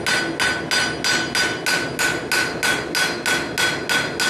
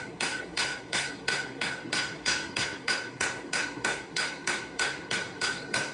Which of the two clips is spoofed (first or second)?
second